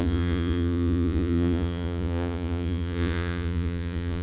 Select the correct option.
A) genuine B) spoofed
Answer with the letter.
B